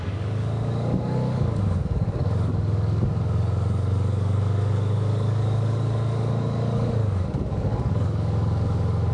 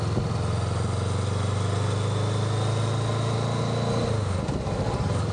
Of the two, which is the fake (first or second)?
first